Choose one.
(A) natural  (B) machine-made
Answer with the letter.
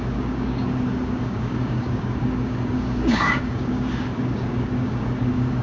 B